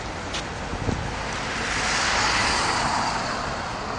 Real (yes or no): yes